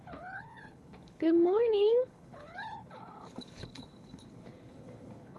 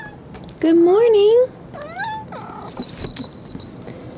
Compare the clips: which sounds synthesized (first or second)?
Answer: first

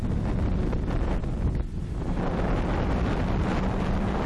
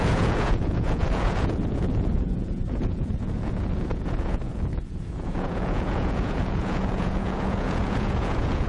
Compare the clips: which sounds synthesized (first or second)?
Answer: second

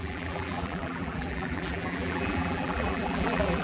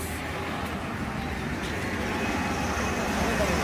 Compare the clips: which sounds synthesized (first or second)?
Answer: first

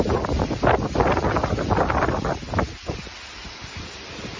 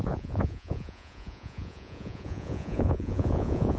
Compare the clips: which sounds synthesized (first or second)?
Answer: second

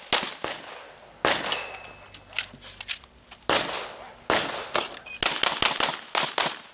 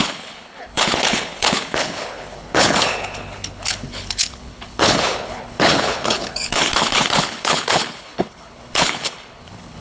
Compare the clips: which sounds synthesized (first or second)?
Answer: second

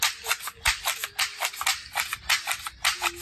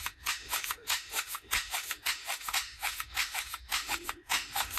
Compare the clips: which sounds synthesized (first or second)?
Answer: second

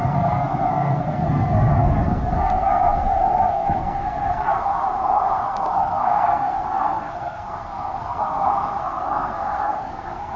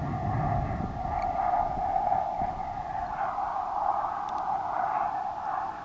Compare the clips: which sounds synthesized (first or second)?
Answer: first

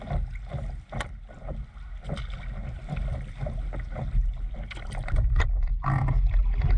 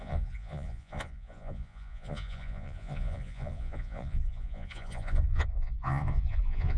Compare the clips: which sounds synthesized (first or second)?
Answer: second